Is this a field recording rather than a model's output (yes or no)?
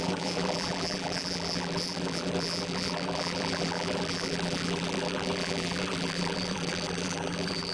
no